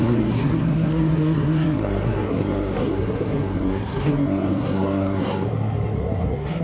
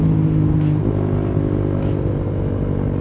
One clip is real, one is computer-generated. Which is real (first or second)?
second